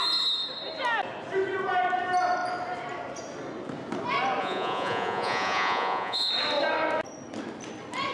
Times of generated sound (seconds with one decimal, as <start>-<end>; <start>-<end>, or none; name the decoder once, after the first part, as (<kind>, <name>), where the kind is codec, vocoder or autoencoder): 4.4-6.3 (vocoder, Vocos)